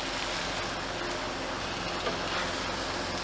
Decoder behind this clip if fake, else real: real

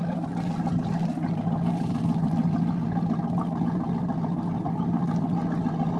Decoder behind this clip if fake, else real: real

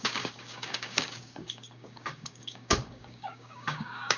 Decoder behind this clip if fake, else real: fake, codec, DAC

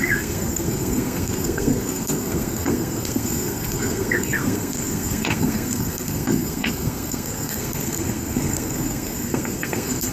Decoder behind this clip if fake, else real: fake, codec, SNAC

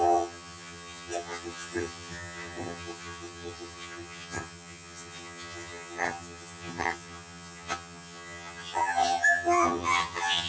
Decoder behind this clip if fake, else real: fake, vocoder, HiFi-GAN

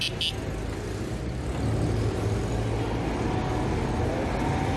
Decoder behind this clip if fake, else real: real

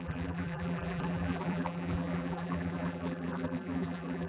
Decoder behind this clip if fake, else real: fake, vocoder, BigVGAN v2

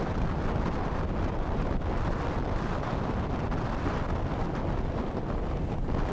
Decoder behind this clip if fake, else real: real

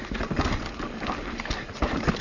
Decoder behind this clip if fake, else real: real